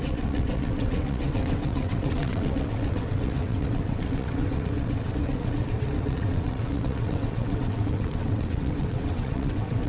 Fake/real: fake